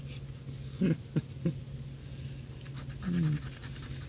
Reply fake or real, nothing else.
real